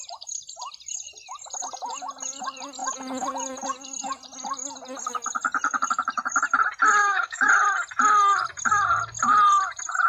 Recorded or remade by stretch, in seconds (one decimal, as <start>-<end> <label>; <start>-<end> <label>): 0.0-7.0 recorded; 7.0-7.5 remade; 7.5-10.1 recorded